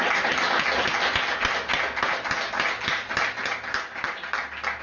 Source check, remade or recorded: recorded